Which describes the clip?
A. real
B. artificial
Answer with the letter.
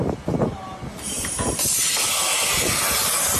A